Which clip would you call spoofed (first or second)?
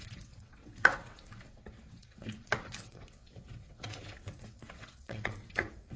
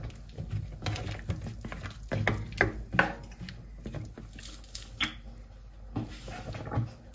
first